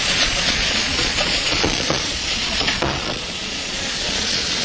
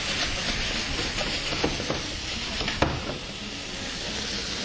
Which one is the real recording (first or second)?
second